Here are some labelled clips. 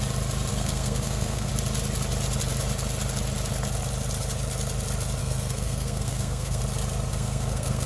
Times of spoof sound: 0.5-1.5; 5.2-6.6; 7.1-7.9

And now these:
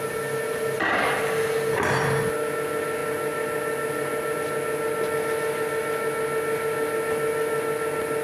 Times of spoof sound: none

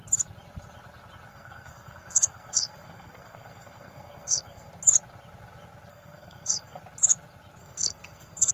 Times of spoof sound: 1.3-4.7; 5.9-6.8; 7.6-8.5